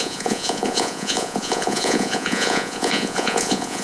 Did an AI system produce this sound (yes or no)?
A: yes